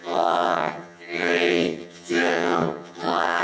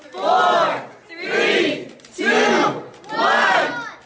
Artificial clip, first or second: first